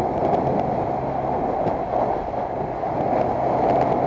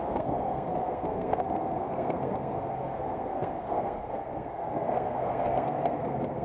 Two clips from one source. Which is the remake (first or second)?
second